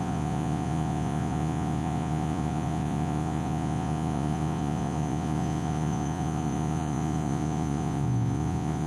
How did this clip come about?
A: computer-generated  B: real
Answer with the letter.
A